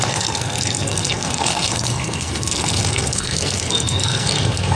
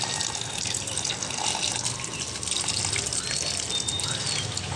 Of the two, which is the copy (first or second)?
first